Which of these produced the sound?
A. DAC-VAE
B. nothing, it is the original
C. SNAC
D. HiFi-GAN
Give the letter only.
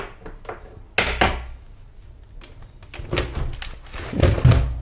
B